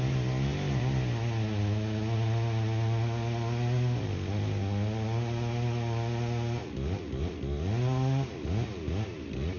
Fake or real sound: real